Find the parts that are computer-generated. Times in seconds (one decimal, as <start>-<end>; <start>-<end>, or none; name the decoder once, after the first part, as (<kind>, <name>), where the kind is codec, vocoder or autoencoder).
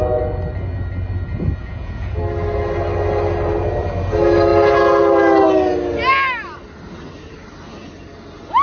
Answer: 1.6-2.2 (vocoder, Vocos)